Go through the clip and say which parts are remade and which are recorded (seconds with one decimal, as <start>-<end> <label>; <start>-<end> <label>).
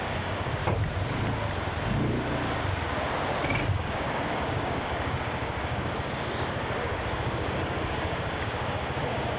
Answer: 0.0-0.6 remade; 0.6-3.7 recorded; 3.7-9.4 remade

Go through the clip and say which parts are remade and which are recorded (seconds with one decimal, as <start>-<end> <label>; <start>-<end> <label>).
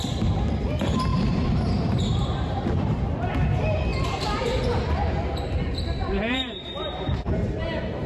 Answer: 0.0-1.1 recorded; 1.1-3.0 remade; 3.0-3.9 recorded; 3.9-8.1 remade